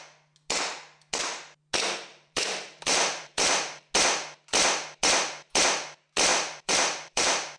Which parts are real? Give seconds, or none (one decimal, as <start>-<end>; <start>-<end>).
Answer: 0.0-2.1; 3.9-6.3